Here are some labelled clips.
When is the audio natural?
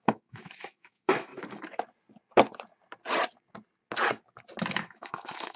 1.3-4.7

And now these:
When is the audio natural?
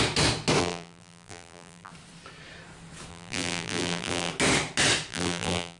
0.0-0.6; 1.9-3.1; 4.3-5.1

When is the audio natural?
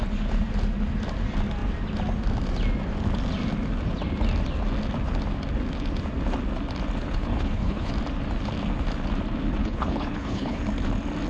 0.0-7.0; 7.9-9.6; 10.6-11.3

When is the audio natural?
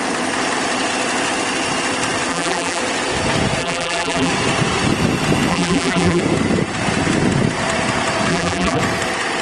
0.0-2.3; 2.8-3.6; 4.3-5.5; 6.2-8.3; 8.8-9.4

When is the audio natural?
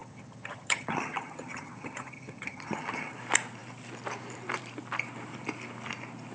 3.2-6.3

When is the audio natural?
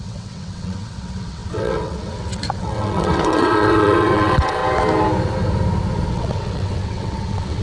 4.6-6.1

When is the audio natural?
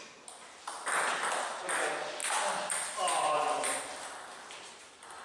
0.0-5.2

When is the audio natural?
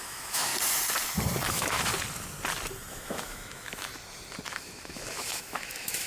0.5-1.5; 1.9-2.9; 3.9-4.5